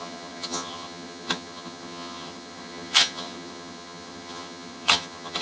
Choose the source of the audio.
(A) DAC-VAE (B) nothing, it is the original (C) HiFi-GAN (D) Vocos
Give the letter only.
C